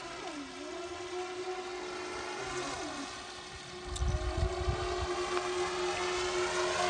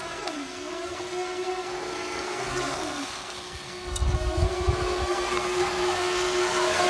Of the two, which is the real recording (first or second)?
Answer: first